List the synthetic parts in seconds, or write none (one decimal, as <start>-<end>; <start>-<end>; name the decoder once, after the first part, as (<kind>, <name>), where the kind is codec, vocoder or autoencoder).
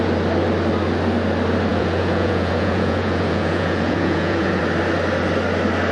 1.7-4.6 (vocoder, Vocos)